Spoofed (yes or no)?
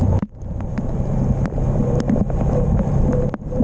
yes